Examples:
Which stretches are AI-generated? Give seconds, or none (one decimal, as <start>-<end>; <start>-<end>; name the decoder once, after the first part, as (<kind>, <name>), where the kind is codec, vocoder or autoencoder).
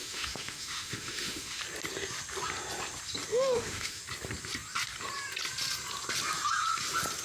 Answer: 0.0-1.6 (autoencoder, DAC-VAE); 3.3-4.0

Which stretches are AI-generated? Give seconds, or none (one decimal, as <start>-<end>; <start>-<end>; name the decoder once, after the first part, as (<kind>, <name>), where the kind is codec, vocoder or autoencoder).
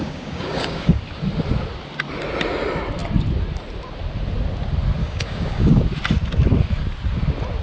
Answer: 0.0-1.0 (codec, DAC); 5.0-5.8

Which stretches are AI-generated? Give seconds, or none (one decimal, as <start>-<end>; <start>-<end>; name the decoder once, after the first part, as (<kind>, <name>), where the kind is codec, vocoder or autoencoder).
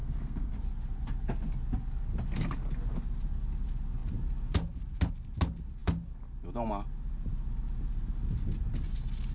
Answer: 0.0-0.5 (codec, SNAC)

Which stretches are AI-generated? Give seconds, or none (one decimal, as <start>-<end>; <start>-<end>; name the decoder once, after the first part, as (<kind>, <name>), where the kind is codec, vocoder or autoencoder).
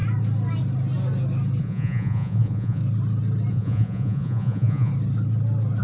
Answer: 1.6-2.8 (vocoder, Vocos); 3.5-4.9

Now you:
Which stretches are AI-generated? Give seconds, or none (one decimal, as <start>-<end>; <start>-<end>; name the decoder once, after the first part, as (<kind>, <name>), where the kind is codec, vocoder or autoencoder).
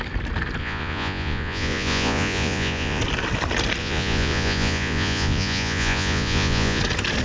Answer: 0.6-3.0 (vocoder, Vocos); 3.8-6.8